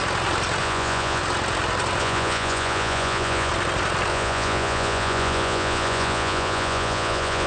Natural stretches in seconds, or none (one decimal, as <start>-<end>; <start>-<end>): 0.0-0.6; 1.2-2.0; 3.5-4.1